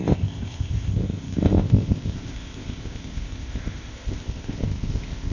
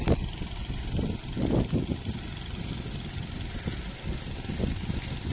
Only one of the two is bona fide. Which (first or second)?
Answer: second